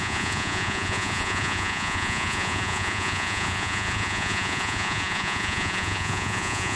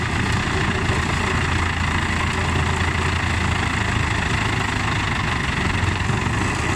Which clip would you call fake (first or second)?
first